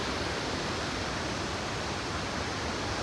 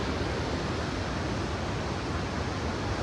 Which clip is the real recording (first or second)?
second